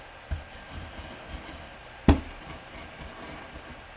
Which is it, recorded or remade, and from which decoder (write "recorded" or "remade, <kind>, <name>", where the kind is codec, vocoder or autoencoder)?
recorded